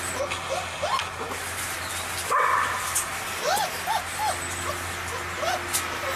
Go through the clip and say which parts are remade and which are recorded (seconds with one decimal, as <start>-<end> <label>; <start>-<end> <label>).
0.0-6.2 recorded